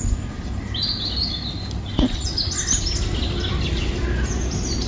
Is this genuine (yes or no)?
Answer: yes